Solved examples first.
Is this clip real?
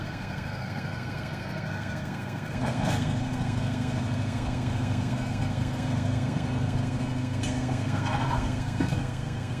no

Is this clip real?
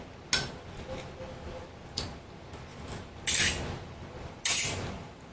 yes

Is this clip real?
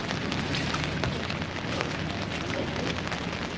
yes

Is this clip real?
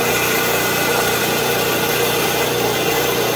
yes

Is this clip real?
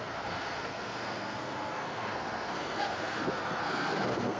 no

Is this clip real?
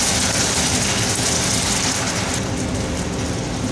yes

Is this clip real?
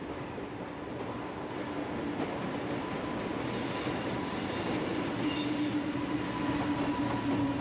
yes